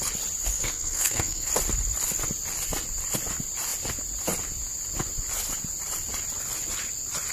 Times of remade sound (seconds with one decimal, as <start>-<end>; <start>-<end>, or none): 0.5-1.5